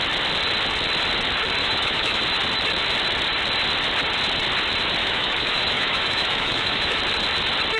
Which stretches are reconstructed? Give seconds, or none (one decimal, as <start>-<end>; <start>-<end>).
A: 1.6-2.2; 5.0-7.0